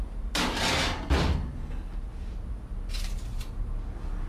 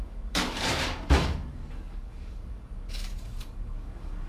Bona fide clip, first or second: first